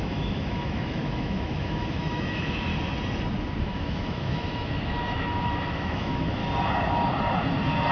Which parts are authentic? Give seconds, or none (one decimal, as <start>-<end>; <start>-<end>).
2.7-3.6; 6.4-7.9